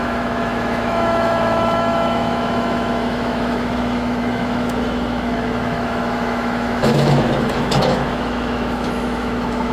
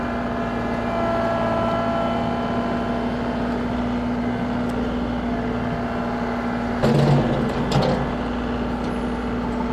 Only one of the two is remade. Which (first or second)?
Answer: first